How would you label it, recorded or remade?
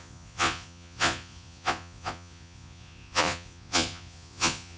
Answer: remade